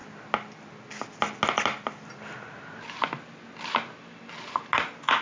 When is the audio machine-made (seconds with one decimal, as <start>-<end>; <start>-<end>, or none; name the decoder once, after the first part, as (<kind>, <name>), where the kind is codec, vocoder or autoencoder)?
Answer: none